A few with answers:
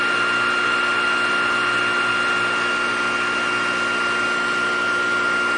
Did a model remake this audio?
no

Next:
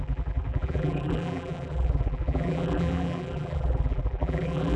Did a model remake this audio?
yes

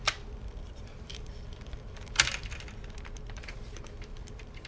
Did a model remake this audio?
yes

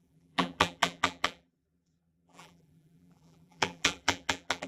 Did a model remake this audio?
yes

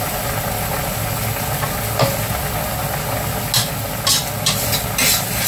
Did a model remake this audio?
no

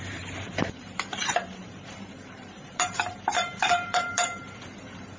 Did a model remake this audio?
yes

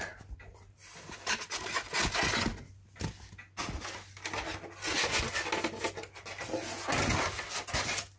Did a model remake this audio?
no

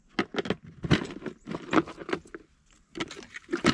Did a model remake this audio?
no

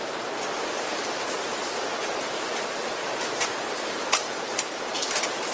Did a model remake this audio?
yes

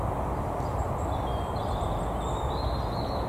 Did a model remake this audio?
no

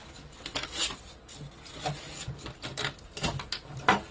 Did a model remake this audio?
no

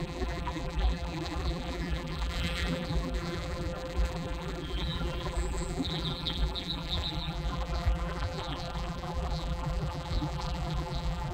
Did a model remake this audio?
yes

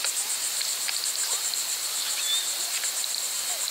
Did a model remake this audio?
no